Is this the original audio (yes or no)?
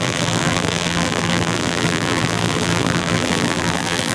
no